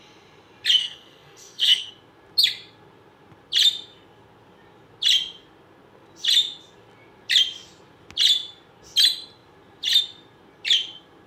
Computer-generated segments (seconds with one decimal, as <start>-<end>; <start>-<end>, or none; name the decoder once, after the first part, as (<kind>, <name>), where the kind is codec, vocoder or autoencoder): 0.8-1.9 (codec, SNAC)